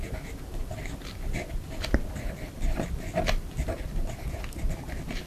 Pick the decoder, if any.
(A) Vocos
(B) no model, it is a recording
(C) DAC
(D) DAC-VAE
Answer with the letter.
B